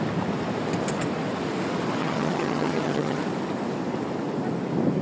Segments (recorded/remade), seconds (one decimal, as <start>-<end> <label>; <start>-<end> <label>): 0.0-2.0 recorded; 2.0-3.2 remade; 3.2-5.0 recorded